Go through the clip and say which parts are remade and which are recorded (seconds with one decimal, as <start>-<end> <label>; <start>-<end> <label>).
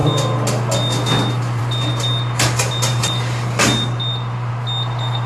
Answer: 0.0-5.3 recorded